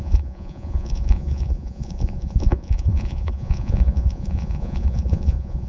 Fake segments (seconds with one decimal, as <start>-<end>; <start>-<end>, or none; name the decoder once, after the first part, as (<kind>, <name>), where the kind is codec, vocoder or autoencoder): 0.0-5.7 (vocoder, Vocos)